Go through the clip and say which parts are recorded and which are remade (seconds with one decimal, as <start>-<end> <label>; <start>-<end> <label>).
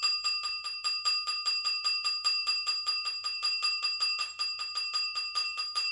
0.0-5.9 remade